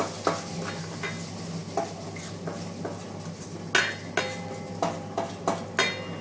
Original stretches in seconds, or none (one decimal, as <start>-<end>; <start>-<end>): 0.0-6.2